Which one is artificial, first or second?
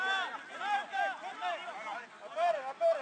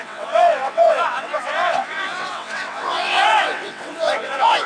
second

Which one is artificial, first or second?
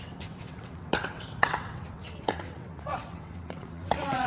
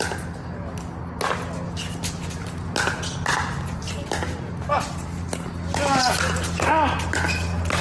first